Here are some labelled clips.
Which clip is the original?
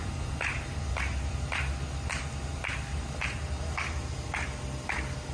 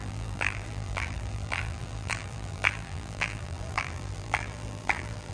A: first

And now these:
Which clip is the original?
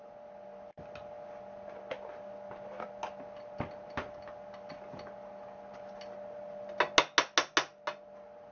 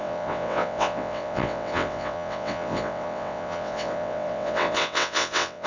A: first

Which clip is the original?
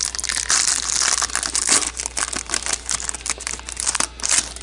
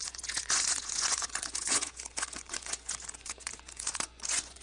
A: first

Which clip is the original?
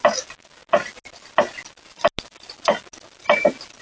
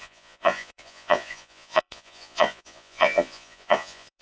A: first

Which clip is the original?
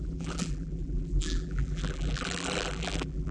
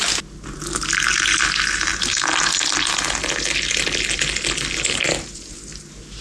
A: second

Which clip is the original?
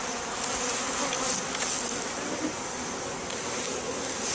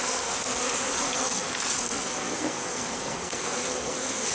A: first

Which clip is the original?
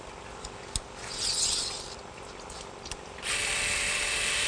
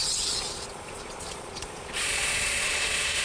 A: first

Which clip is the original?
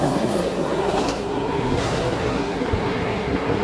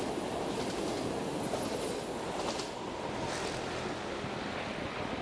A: second